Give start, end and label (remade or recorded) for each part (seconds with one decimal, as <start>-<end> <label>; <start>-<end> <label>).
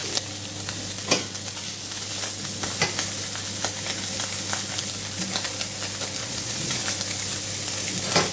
0.0-6.2 recorded; 6.2-6.8 remade; 6.8-8.3 recorded